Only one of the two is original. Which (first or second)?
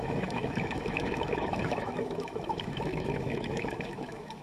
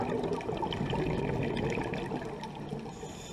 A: second